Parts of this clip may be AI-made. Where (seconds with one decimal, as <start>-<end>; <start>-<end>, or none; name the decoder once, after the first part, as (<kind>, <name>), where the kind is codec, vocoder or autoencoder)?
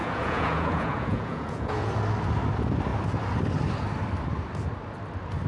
0.0-1.9 (vocoder, Vocos)